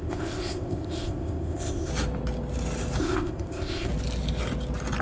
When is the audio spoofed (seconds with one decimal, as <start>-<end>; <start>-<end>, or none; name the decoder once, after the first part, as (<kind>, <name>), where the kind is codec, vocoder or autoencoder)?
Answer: 0.0-1.9 (codec, ZipCodec); 3.0-3.9